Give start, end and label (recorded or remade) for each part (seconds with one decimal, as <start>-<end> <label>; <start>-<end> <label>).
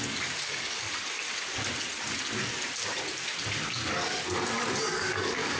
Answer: 0.0-1.2 remade; 1.2-4.6 recorded; 4.6-5.6 remade